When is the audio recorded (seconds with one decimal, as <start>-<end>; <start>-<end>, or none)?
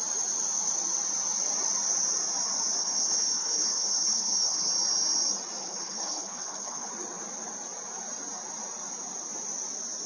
0.0-2.8; 4.7-5.6; 6.9-10.1